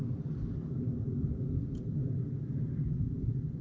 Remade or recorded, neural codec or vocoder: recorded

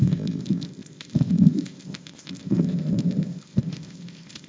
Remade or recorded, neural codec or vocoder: remade, codec, ZipCodec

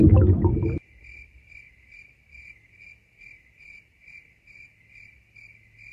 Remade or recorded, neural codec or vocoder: recorded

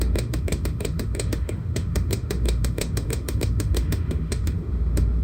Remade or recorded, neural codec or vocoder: remade, autoencoder, DAC-VAE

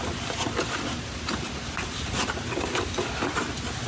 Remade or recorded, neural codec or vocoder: recorded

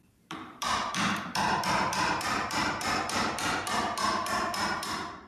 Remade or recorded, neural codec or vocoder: remade, vocoder, BigVGAN v2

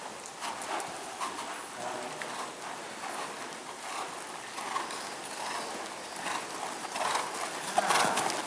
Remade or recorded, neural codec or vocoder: recorded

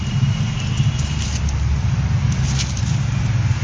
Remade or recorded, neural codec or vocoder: recorded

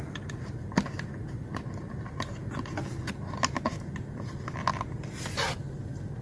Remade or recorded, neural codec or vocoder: recorded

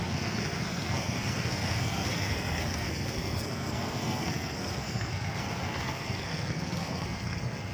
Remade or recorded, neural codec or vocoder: remade, codec, SNAC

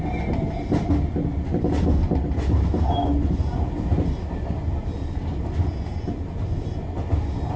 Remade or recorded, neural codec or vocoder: recorded